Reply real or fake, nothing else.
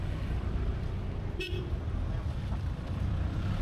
fake